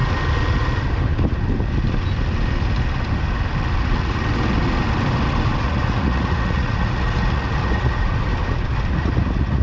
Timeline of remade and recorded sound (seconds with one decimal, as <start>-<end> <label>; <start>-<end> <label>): 0.0-3.8 recorded; 3.8-4.2 remade; 4.2-5.6 recorded; 5.6-8.3 remade; 8.3-8.9 recorded; 8.9-9.6 remade

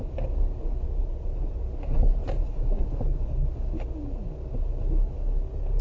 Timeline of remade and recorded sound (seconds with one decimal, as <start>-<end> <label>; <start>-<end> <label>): 0.0-5.8 recorded

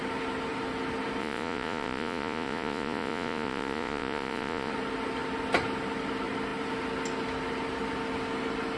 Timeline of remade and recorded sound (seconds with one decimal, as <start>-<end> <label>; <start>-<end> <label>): 0.0-1.2 recorded; 1.2-4.7 remade; 4.7-8.8 recorded